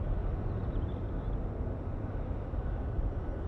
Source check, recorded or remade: recorded